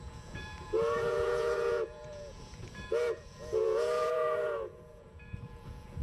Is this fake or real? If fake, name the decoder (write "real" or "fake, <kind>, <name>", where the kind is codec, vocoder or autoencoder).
fake, vocoder, Vocos